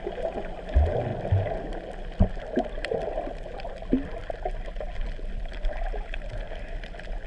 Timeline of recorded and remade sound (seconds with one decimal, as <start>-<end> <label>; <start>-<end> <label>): 0.0-7.3 recorded